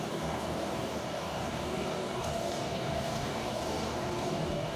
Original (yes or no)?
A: no